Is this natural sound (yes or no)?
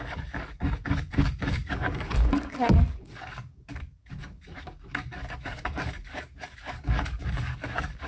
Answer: no